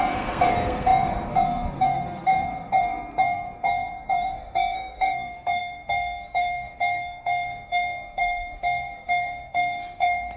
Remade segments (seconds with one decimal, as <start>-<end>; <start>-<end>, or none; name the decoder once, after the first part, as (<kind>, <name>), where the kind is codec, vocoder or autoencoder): 0.0-10.4 (codec, SNAC)